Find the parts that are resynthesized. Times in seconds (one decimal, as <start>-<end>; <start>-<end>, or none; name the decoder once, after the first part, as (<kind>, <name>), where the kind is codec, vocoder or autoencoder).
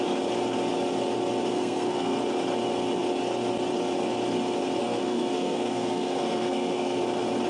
1.5-2.2 (codec, SNAC); 4.8-7.0